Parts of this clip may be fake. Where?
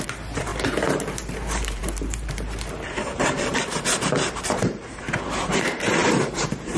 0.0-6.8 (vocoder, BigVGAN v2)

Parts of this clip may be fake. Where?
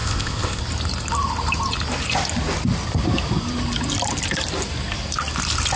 0.0-0.6 (codec, ZipCodec)